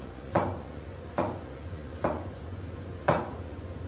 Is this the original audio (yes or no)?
no